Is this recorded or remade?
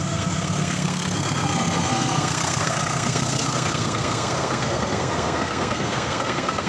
remade